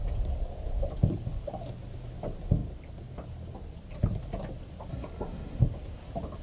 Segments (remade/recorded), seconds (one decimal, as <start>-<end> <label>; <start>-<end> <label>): 0.0-4.9 recorded; 4.9-5.6 remade; 5.6-6.4 recorded